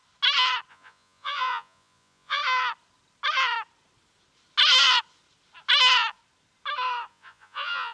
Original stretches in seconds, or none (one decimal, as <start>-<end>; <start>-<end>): 0.0-0.7; 2.4-7.1